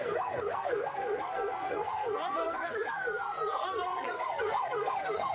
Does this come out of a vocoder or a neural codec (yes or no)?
yes